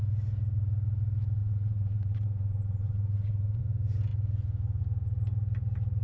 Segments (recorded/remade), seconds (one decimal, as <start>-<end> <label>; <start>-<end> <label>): 0.0-1.4 recorded; 1.4-3.6 remade; 3.6-6.0 recorded